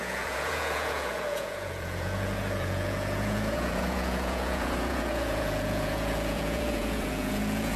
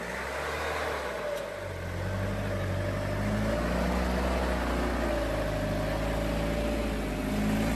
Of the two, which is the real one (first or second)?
second